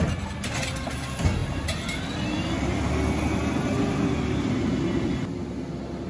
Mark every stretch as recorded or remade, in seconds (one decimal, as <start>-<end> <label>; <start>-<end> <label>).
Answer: 0.0-6.1 recorded